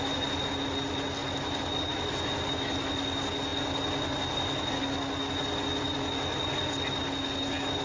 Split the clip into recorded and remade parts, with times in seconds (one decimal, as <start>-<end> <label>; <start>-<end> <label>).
0.0-7.8 recorded